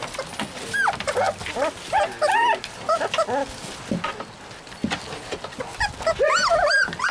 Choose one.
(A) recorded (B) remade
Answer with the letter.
A